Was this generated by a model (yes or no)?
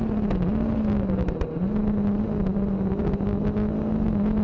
no